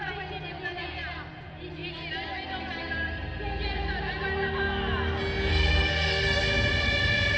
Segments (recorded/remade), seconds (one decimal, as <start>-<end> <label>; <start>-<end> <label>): 0.0-5.5 recorded; 5.5-6.4 remade; 6.4-7.4 recorded